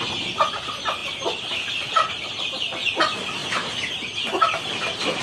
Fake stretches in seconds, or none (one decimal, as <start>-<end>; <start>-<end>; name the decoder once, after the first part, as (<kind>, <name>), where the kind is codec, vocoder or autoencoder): none